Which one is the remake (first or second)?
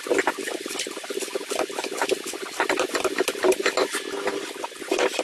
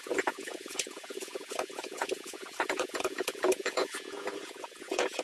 second